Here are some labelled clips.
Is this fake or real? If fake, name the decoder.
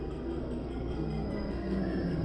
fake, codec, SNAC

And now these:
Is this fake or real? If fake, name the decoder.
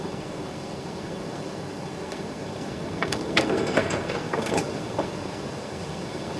fake, codec, SNAC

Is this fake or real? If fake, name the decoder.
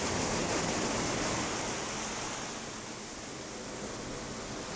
real